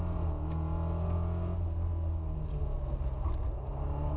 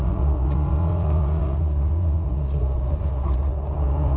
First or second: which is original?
first